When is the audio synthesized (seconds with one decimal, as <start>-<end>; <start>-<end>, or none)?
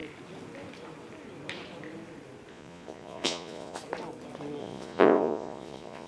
2.5-3.8; 4.6-6.1